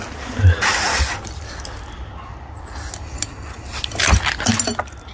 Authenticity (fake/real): real